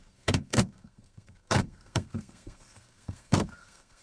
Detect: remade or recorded remade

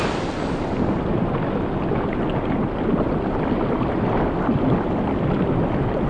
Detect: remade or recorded recorded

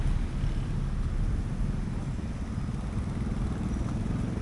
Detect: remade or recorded recorded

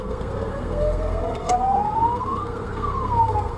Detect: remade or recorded remade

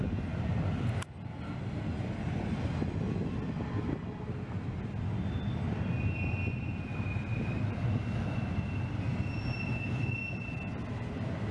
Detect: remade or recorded recorded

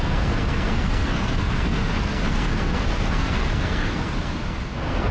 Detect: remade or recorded remade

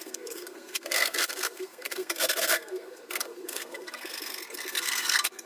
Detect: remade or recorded remade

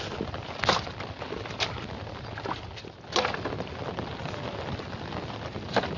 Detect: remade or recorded recorded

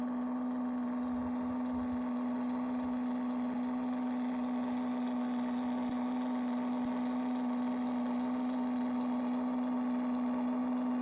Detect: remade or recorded recorded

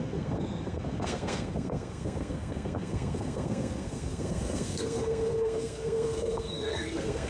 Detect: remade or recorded remade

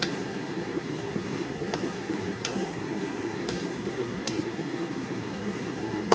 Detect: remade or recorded remade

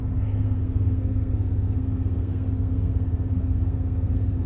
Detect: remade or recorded remade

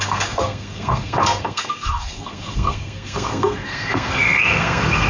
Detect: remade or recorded remade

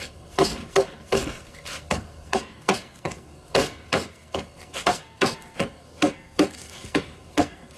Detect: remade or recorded remade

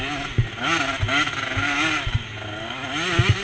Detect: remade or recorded recorded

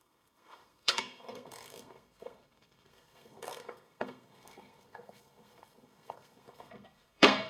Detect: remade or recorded remade